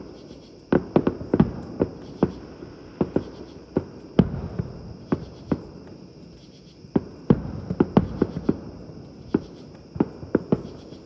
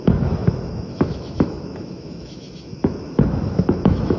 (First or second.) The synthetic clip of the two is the second